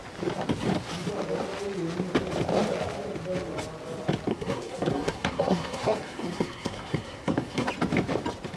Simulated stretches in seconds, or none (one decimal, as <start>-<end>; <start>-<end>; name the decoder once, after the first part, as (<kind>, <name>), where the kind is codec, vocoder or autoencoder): 4.3-7.7 (codec, SNAC)